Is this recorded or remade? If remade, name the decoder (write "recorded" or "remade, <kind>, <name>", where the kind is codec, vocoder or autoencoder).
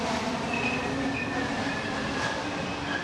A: recorded